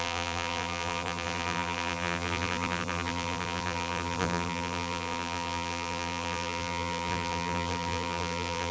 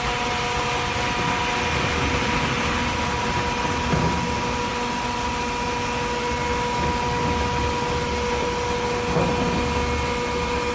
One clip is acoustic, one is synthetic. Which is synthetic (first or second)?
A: first